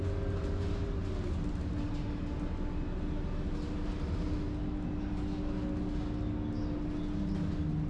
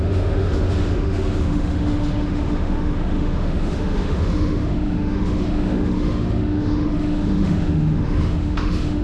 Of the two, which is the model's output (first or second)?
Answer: second